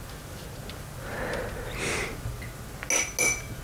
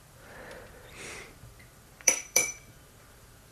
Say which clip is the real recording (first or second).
first